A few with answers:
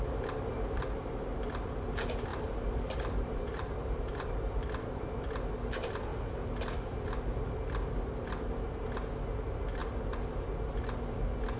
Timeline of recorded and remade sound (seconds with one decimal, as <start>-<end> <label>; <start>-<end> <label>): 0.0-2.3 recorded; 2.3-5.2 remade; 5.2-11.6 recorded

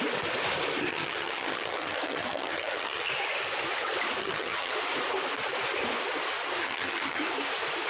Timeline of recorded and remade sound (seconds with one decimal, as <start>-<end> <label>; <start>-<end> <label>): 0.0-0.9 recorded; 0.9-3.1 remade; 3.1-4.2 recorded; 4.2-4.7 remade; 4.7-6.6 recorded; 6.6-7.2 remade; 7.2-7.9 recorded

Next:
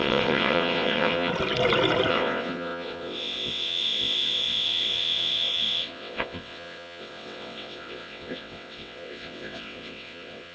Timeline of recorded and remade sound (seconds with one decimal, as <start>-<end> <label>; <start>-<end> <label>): 0.0-1.3 remade; 1.3-2.1 recorded; 2.1-10.5 remade

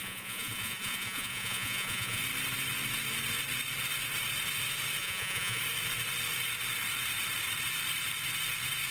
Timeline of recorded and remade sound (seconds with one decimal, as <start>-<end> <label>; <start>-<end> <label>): 0.0-2.2 remade; 2.2-5.0 recorded; 5.0-5.6 remade; 5.6-8.9 recorded

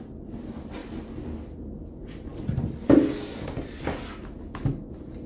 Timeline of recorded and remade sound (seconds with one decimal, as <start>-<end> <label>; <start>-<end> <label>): 0.0-5.3 recorded

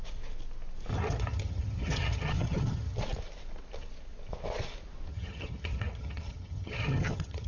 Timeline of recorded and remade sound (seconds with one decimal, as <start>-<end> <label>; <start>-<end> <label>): 0.0-0.9 recorded; 0.9-3.0 remade; 3.0-5.1 recorded; 5.1-7.5 remade

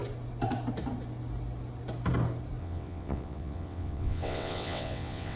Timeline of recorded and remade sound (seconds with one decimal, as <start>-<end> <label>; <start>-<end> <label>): 0.0-2.6 recorded; 2.6-5.4 remade

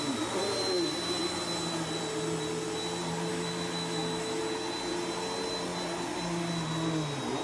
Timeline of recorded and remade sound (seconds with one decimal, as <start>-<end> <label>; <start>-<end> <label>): 0.0-3.3 recorded; 3.3-4.4 remade; 4.4-7.4 recorded